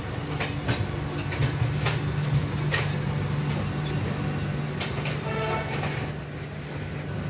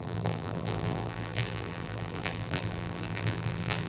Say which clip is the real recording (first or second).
first